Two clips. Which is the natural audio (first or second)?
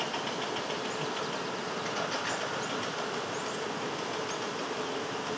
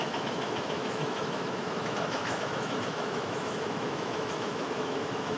first